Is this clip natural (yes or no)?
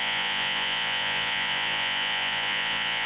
no